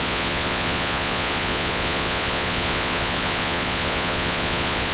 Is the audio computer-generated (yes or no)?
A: yes